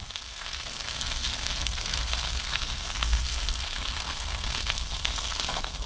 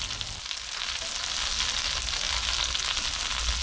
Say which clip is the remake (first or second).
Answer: first